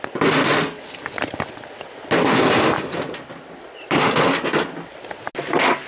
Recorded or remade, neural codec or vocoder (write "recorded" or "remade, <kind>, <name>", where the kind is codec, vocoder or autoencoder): recorded